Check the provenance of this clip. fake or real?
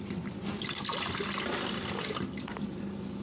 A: real